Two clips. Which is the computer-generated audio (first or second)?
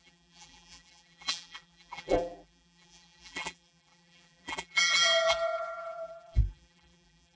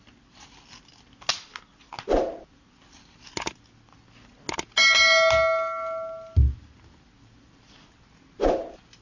first